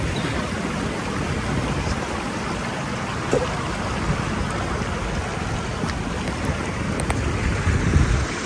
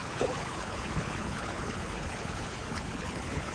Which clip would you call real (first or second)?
first